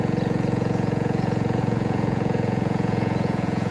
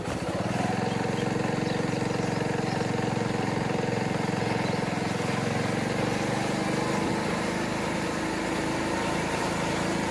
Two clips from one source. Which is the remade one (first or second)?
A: first